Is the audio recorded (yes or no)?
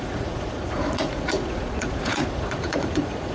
no